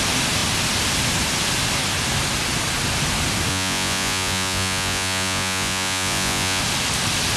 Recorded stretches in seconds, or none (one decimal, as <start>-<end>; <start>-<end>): 0.0-3.5; 6.6-7.4